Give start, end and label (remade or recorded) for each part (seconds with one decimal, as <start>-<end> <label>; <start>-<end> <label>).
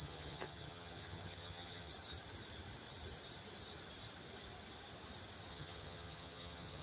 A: 0.0-1.9 remade; 1.9-5.5 recorded; 5.5-6.8 remade